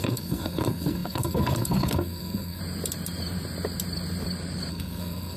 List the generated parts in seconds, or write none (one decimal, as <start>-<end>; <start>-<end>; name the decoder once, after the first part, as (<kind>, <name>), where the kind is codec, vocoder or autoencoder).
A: 0.0-2.6 (codec, SNAC); 4.7-5.4